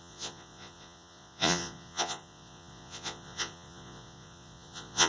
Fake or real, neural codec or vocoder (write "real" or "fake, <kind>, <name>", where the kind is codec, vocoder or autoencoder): fake, vocoder, Vocos